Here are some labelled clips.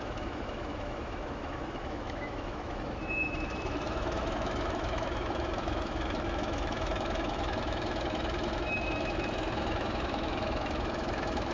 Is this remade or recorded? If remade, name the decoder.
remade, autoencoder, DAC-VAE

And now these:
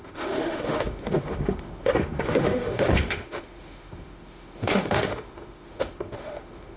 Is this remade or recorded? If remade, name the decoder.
remade, autoencoder, DAC-VAE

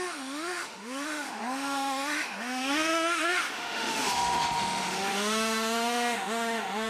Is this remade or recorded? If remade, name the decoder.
remade, autoencoder, DAC-VAE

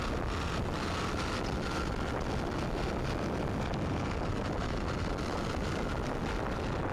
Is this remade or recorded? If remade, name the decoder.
recorded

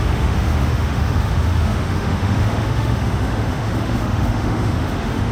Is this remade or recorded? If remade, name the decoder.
remade, autoencoder, DAC-VAE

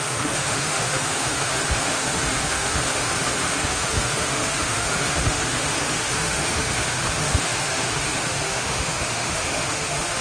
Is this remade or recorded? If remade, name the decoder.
remade, autoencoder, DAC-VAE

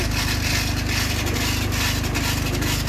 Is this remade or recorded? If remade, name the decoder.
recorded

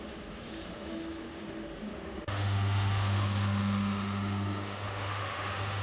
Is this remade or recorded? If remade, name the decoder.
remade, autoencoder, DAC-VAE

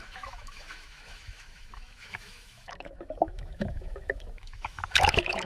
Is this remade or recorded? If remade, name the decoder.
remade, autoencoder, DAC-VAE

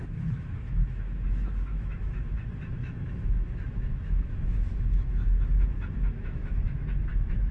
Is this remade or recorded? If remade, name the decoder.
remade, autoencoder, DAC-VAE